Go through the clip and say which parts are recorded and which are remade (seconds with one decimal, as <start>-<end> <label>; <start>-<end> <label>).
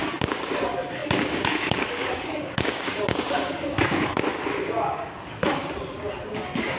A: 0.0-4.1 remade; 4.1-4.6 recorded; 4.6-5.6 remade; 5.6-6.8 recorded